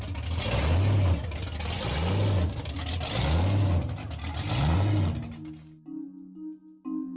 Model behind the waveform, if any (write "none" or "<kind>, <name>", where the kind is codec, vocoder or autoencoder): none